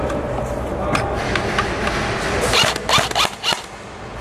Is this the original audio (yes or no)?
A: yes